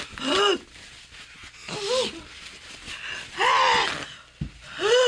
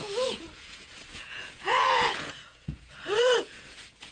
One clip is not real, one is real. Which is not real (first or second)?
second